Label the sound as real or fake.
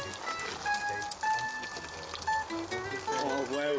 real